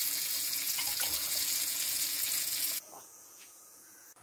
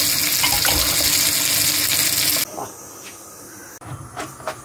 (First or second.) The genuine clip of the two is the second